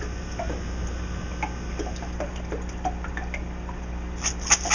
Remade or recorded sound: recorded